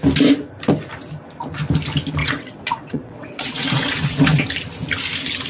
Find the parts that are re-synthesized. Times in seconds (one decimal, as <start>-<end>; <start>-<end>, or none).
2.2-4.4